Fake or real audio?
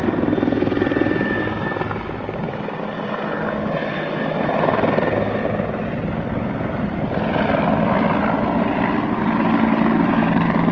real